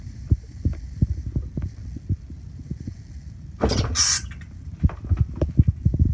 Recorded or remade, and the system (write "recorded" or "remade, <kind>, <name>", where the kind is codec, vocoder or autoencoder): recorded